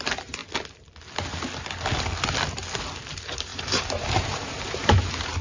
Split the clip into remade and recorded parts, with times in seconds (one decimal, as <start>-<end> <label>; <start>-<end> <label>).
0.0-0.4 remade; 0.4-3.0 recorded; 3.0-5.4 remade